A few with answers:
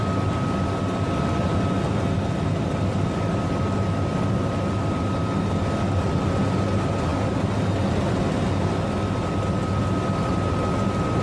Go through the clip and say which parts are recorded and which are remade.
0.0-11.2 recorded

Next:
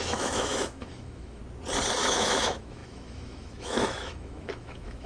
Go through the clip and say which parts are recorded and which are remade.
0.0-1.4 remade; 1.4-2.0 recorded; 2.0-5.1 remade

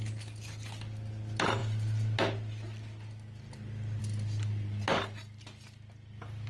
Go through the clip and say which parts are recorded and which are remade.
0.0-6.5 recorded

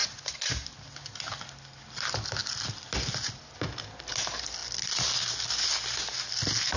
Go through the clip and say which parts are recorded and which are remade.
0.0-6.8 recorded

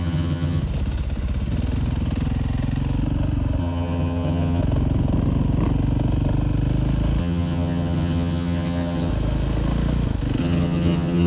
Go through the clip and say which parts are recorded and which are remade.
0.0-0.6 remade; 0.6-3.6 recorded; 3.6-4.6 remade; 4.6-7.2 recorded; 7.2-9.1 remade; 9.1-10.4 recorded; 10.4-11.3 remade

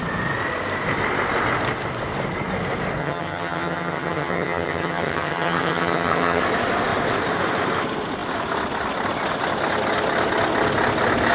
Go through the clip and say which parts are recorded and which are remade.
0.0-3.0 recorded; 3.0-6.4 remade; 6.4-11.3 recorded

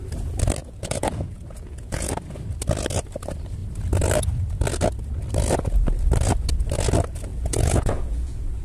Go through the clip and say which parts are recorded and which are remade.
0.0-0.6 recorded; 0.6-2.1 remade; 2.1-7.3 recorded; 7.3-8.6 remade

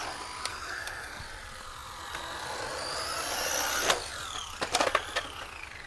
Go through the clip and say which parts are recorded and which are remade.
0.0-0.5 recorded; 0.5-1.2 remade; 1.2-5.9 recorded